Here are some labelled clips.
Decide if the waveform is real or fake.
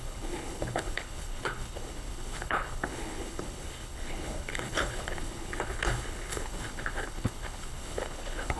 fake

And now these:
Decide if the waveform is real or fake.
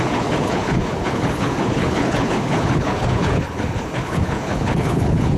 fake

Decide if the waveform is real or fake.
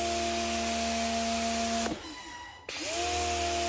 real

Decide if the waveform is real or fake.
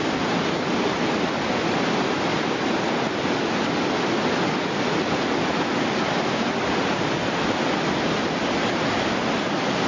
real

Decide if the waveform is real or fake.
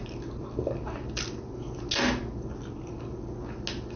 real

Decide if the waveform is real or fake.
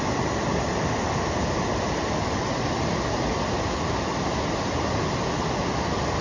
real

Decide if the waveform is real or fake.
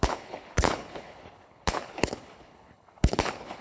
fake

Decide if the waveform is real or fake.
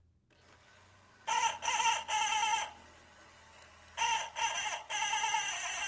real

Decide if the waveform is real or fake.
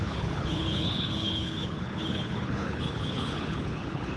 fake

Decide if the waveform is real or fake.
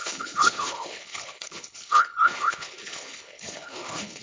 fake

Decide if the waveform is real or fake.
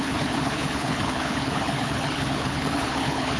fake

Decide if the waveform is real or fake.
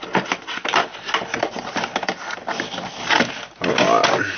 real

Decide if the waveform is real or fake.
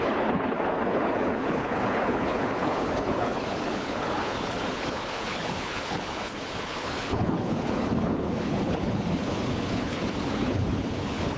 fake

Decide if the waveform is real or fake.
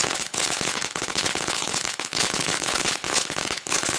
fake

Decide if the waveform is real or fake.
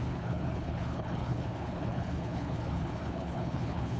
fake